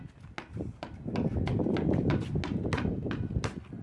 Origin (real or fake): real